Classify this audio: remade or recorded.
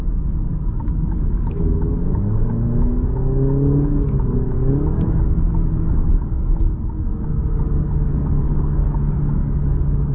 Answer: remade